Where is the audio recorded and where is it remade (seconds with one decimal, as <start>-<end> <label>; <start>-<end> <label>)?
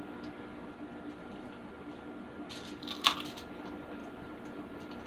0.0-1.2 recorded; 1.2-1.7 remade; 1.7-4.0 recorded; 4.0-5.1 remade